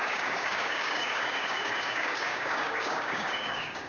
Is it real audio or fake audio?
fake